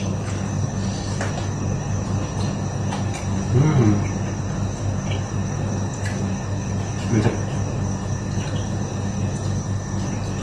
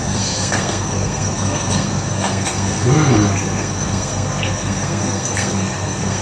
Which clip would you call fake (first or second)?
second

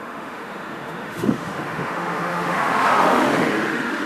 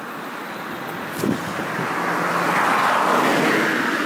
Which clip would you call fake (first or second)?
first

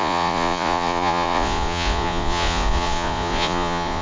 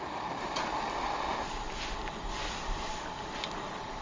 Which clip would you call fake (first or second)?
first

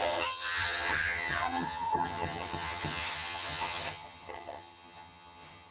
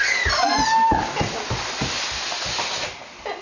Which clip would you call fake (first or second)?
first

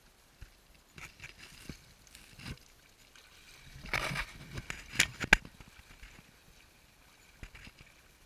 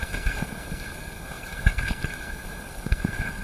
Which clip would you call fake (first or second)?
second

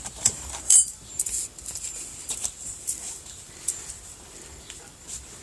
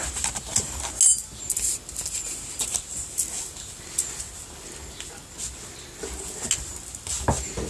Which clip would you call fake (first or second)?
first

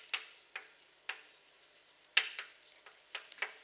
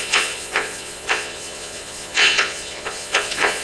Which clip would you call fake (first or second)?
second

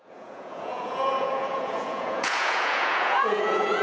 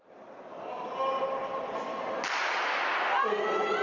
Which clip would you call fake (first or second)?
first